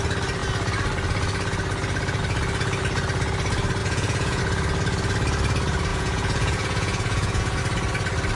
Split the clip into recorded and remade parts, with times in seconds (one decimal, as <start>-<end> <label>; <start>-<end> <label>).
0.0-3.8 recorded; 3.8-4.4 remade; 4.4-5.9 recorded; 5.9-7.6 remade; 7.6-8.3 recorded